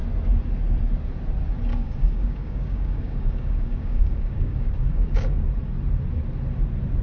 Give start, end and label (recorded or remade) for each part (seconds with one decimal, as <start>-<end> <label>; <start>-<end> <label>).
0.0-1.7 recorded; 1.7-5.5 remade; 5.5-7.0 recorded